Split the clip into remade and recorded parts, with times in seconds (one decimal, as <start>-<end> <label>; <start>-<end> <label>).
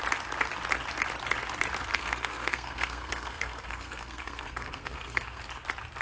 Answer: 0.0-1.9 recorded; 1.9-5.4 remade; 5.4-6.0 recorded